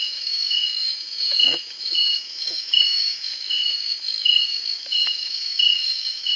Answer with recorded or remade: remade